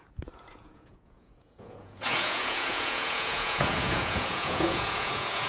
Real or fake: fake